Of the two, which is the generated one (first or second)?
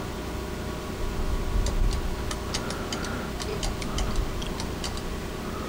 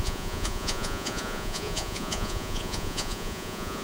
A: second